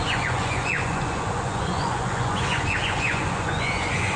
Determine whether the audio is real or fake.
fake